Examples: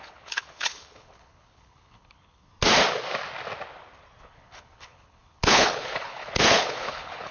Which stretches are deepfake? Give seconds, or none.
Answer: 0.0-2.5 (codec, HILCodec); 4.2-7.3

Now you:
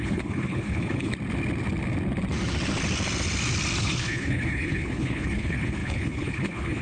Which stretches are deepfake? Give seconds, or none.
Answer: 0.0-1.1 (codec, HILCodec); 3.8-6.8

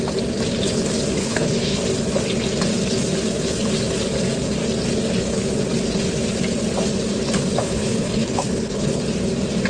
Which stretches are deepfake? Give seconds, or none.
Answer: 1.2-1.8 (codec, HILCodec); 7.6-9.0

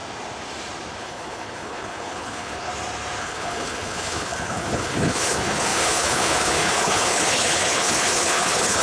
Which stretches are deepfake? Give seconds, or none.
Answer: 1.0-2.7 (codec, HILCodec); 3.2-8.8

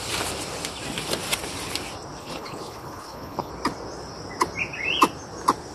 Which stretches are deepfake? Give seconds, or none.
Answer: 2.2-3.5 (codec, HILCodec)

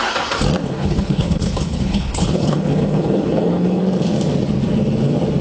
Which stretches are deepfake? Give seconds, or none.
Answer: 0.6-3.8 (codec, HILCodec)

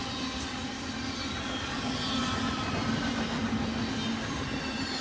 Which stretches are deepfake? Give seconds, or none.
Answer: none

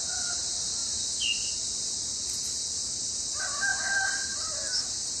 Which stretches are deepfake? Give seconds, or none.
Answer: none